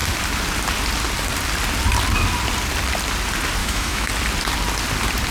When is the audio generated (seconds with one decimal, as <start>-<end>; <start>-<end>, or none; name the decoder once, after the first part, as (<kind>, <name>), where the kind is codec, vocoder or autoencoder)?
3.6-4.1 (autoencoder, DAC-VAE)